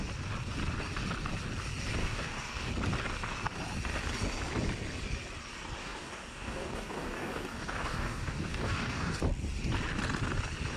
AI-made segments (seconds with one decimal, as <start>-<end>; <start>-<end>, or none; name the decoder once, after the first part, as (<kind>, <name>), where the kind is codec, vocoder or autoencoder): 2.0-2.7 (codec, DAC); 5.8-9.2